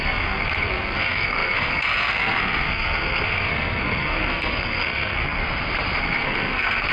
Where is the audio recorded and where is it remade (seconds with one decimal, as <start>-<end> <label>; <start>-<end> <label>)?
0.0-5.4 remade; 5.4-6.0 recorded; 6.0-6.9 remade